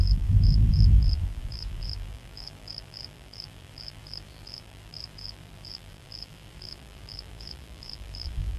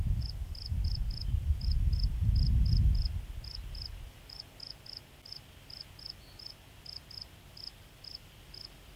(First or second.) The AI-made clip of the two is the first